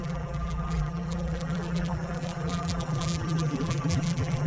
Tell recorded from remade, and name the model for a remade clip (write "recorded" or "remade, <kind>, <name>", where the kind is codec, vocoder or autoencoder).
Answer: remade, vocoder, BigVGAN v2